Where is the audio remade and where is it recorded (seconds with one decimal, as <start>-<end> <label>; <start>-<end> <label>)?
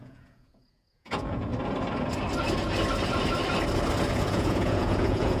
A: 0.0-1.5 remade; 1.5-4.1 recorded; 4.1-5.4 remade